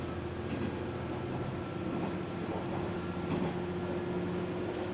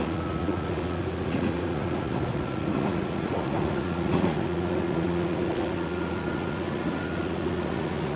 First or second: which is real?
first